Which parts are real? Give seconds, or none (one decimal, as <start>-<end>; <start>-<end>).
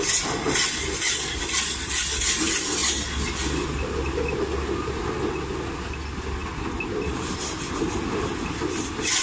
0.0-6.4; 7.7-9.2